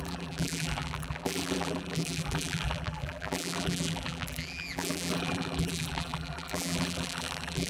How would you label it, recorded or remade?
remade